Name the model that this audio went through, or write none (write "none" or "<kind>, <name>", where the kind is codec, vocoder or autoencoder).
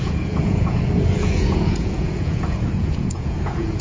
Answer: vocoder, Vocos